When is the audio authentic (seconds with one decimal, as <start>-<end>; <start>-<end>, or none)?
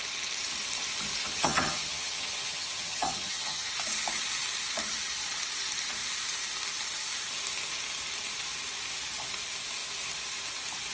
0.0-1.2; 3.7-10.9